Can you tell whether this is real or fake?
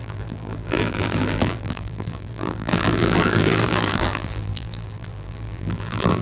fake